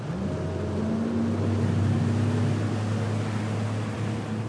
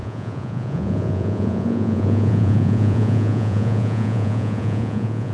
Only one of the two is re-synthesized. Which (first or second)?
second